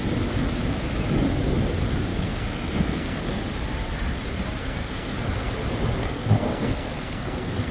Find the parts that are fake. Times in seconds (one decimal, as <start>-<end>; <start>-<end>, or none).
2.1-3.4; 4.6-5.5; 6.0-7.7